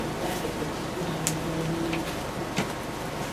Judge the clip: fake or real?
real